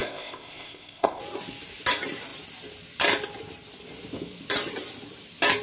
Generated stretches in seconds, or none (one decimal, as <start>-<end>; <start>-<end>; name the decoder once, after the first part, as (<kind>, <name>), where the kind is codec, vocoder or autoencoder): 0.0-1.2 (codec, ZipCodec)